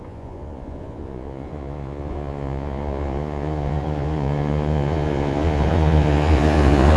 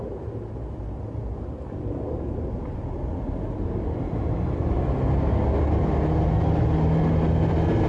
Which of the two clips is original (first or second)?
second